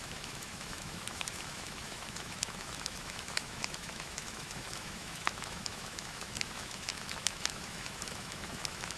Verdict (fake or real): fake